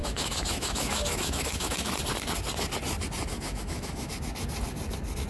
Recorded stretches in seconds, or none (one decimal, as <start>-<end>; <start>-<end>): 1.9-3.3; 4.1-5.3